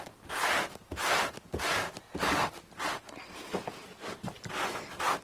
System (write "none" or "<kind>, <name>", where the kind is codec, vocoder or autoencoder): none